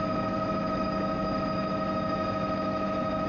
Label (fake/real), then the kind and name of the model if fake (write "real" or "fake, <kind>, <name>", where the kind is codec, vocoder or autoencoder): fake, autoencoder, DAC-VAE